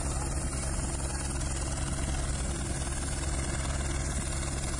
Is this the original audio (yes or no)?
yes